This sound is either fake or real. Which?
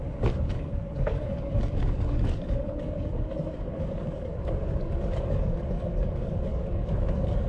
fake